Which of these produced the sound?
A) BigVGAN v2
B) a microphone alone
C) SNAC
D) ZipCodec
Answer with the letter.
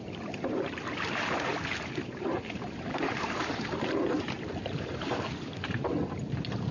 A